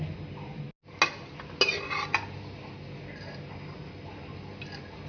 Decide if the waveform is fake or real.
real